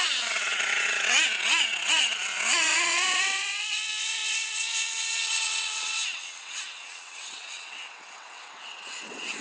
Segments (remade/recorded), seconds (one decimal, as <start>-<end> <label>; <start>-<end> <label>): 0.0-9.4 remade

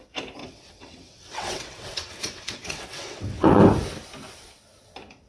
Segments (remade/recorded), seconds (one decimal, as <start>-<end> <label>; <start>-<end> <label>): 0.0-0.4 recorded; 0.4-3.6 remade; 3.6-5.3 recorded

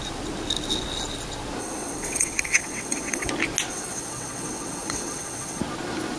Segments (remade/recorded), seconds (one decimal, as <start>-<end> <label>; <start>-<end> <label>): 0.0-1.6 recorded; 1.6-3.3 remade; 3.3-3.7 recorded; 3.7-5.6 remade; 5.6-6.2 recorded

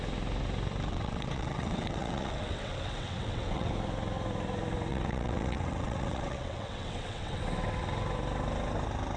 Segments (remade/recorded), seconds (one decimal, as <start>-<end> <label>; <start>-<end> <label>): 0.0-0.9 recorded; 0.9-3.7 remade; 3.7-4.9 recorded; 4.9-7.4 remade; 7.4-9.2 recorded

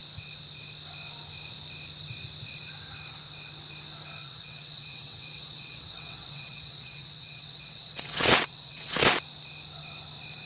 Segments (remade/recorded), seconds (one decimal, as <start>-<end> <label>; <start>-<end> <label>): 0.0-4.2 recorded; 4.2-9.0 remade; 9.0-10.5 recorded